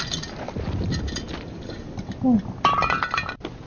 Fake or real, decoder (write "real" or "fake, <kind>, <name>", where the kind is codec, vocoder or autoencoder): real